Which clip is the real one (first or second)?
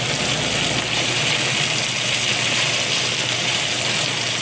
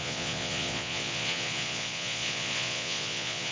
first